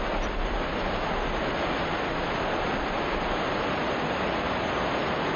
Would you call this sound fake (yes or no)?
no